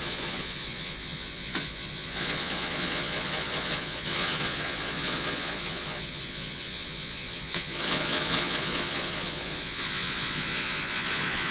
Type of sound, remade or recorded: remade